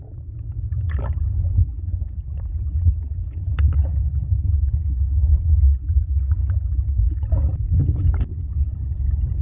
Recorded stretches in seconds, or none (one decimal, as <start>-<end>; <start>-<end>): 0.0-9.4

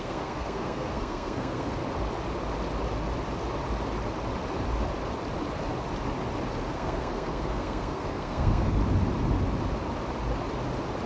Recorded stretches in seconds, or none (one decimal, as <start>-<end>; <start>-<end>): 1.8-6.7; 8.8-11.1

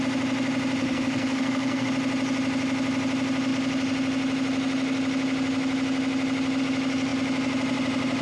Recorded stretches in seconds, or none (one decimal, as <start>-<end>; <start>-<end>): 0.0-0.8; 1.9-8.2

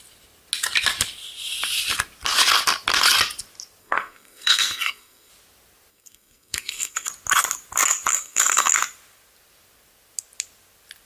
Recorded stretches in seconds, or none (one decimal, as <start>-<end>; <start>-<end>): 0.0-3.8; 5.3-5.9; 7.1-8.1; 8.7-11.1

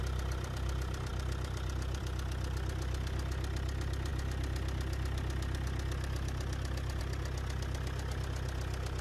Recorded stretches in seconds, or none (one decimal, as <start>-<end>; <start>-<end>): 0.0-9.0

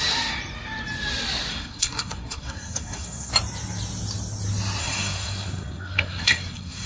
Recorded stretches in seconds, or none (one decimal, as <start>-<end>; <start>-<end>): 0.0-1.5; 3.3-4.8